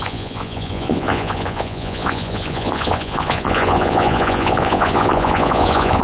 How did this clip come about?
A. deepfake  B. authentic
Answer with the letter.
A